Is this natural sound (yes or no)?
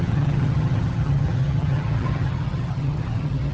no